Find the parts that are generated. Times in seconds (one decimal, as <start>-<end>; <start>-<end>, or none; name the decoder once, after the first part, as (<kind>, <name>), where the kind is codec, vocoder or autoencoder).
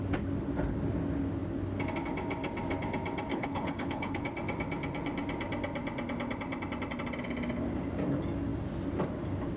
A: 3.3-4.2 (codec, HILCodec)